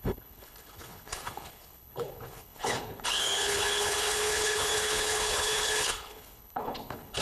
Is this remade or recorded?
remade